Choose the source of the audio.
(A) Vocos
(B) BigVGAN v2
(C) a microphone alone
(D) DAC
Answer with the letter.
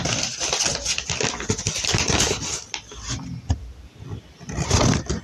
C